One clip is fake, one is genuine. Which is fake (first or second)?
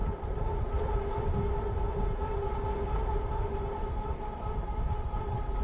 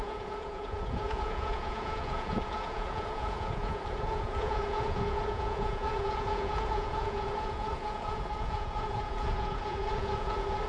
second